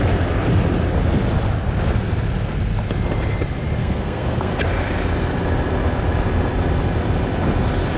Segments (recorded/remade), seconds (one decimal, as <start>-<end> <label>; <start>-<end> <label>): 0.0-3.8 recorded; 3.8-4.5 remade; 4.5-8.0 recorded